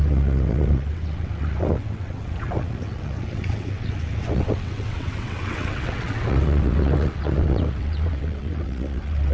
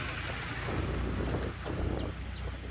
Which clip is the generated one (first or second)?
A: first